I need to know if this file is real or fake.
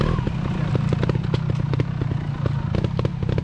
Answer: real